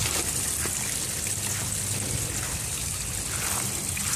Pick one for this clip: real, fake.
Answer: real